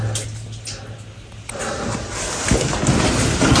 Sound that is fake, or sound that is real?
real